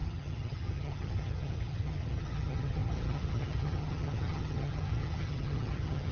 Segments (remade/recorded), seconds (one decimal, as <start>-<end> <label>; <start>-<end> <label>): 0.0-6.1 remade

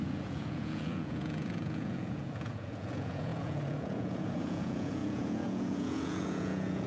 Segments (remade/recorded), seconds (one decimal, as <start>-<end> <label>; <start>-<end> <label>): 0.0-6.9 remade